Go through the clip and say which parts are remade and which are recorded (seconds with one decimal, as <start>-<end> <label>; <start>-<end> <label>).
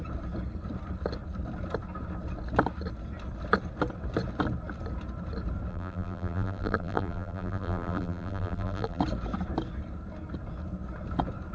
0.0-5.7 recorded; 5.7-9.0 remade; 9.0-11.5 recorded